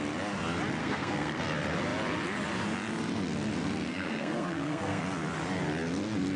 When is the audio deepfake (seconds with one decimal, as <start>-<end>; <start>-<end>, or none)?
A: 0.8-1.4; 3.9-5.0